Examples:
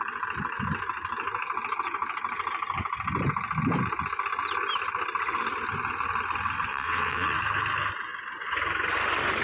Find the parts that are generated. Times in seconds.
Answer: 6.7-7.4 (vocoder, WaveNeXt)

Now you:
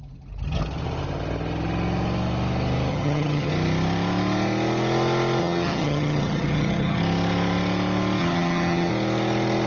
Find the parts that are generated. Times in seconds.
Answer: 2.9-3.5 (vocoder, HiFi-GAN); 5.4-7.0; 8.2-8.9

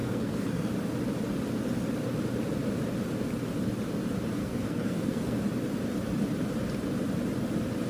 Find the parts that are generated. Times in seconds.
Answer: 0.0-0.7 (codec, SNAC); 4.4-5.4

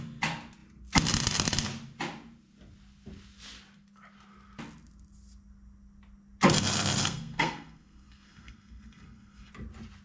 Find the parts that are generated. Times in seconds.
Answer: 7.0-9.5 (codec, SNAC)